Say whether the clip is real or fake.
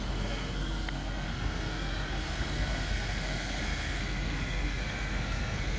fake